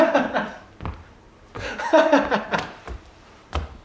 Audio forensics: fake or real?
fake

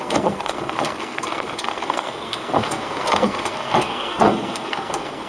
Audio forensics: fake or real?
fake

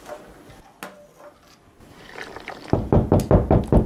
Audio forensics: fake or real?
real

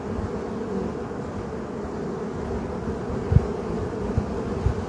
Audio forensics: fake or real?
real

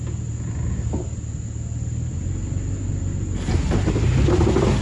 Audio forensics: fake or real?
real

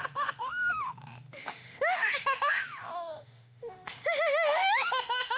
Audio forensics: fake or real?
fake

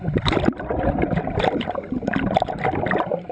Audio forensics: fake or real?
fake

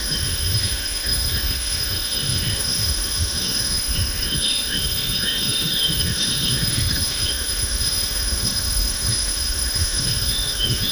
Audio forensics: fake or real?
fake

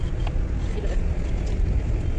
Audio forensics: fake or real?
real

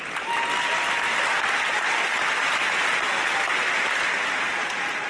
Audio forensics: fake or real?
real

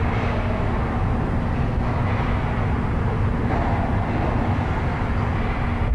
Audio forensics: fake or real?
real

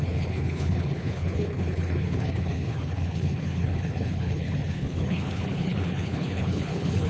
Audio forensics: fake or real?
fake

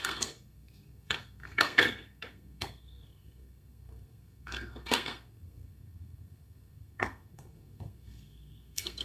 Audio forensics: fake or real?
fake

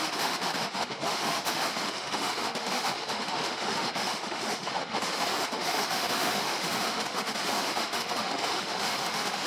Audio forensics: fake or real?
fake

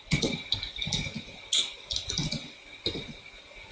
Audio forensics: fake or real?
real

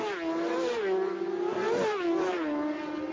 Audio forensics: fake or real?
real